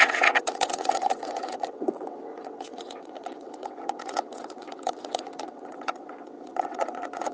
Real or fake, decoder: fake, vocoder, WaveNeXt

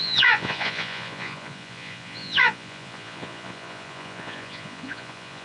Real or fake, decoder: fake, vocoder, Vocos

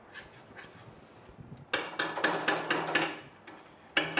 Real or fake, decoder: real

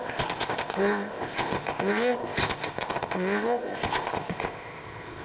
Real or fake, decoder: fake, codec, ZipCodec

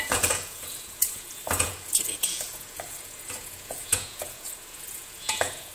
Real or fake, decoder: fake, vocoder, Vocos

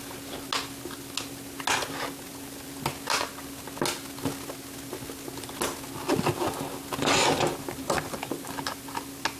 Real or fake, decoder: real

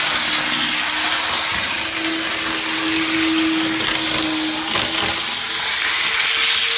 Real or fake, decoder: real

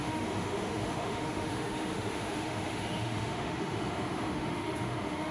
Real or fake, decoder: fake, autoencoder, DAC-VAE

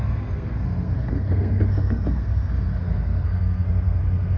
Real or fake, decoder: fake, codec, SNAC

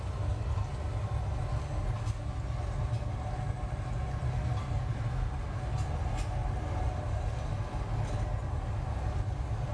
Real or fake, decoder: real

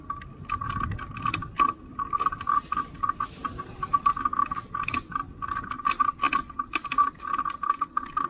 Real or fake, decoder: real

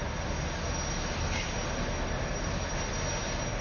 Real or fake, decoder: real